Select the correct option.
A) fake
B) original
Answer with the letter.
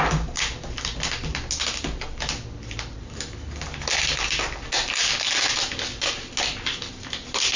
B